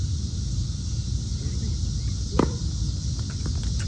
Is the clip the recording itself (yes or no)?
yes